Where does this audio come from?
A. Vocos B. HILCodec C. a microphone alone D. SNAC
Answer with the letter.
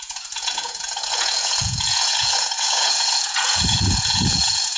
A